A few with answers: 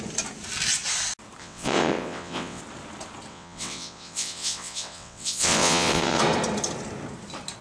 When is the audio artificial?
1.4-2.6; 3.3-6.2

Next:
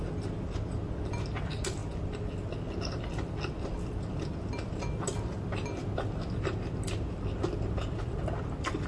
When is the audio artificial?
none

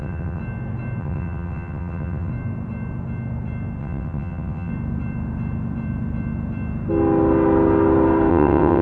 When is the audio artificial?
0.0-0.4; 1.0-2.3; 3.8-4.7; 8.3-8.8

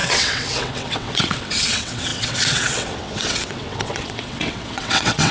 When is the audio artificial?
0.0-5.3